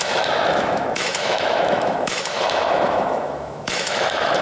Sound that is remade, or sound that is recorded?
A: remade